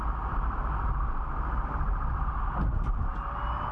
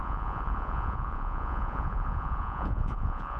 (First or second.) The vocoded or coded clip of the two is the second